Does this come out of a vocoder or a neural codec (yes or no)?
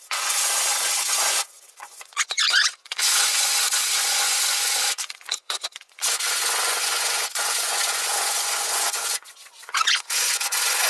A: yes